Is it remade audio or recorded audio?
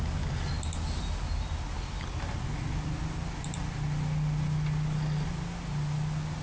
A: recorded